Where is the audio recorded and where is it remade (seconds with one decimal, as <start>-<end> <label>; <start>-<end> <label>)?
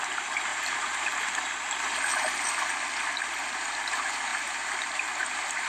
0.0-0.5 recorded; 0.5-1.7 remade; 1.7-4.3 recorded; 4.3-5.7 remade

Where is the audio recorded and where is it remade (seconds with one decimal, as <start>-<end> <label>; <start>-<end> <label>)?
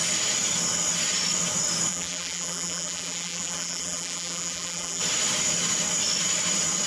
0.0-1.9 recorded; 1.9-5.0 remade; 5.0-6.9 recorded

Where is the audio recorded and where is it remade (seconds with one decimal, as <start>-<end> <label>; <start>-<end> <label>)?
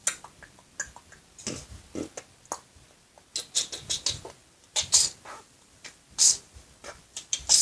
0.0-4.4 recorded; 4.4-7.6 remade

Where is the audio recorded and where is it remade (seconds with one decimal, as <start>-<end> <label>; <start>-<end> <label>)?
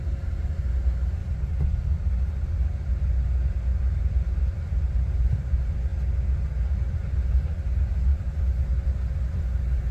0.0-3.7 recorded; 3.7-5.0 remade; 5.0-8.1 recorded; 8.1-8.6 remade; 8.6-9.9 recorded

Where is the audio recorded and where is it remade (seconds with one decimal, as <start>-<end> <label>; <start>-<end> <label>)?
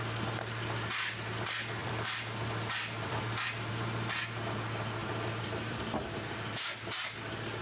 0.0-1.8 recorded; 1.8-3.7 remade; 3.7-5.0 recorded; 5.0-7.6 remade